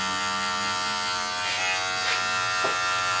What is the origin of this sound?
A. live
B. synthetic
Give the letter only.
A